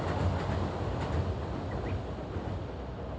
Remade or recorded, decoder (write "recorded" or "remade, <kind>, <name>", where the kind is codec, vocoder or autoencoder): recorded